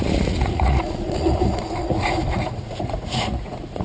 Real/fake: fake